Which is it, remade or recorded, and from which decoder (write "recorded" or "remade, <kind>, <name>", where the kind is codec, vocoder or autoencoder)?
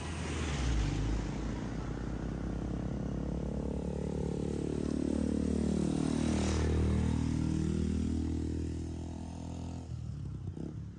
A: recorded